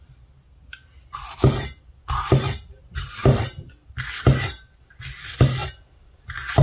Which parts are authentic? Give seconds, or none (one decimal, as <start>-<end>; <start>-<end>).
0.0-6.6